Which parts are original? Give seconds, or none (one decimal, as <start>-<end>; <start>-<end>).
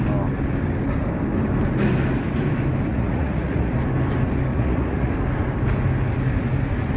0.0-2.9; 3.7-4.5; 5.1-7.0